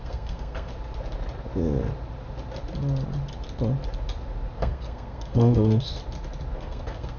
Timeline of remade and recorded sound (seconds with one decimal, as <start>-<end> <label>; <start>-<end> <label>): 0.0-0.7 remade; 0.7-4.6 recorded; 4.6-6.0 remade; 6.0-6.6 recorded; 6.6-7.2 remade